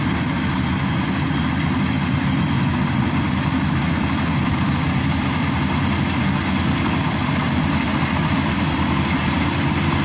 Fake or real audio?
real